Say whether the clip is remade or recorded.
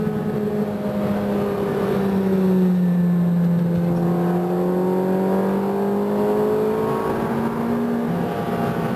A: recorded